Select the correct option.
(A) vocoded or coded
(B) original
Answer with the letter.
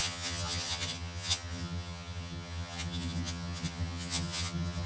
A